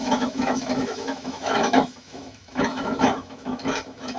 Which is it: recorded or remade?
remade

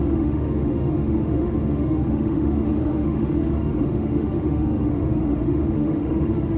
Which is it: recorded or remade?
remade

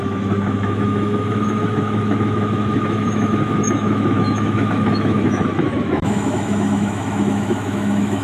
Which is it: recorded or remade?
remade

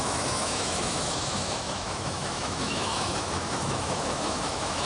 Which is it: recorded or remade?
remade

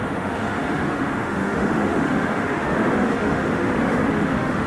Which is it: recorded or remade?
remade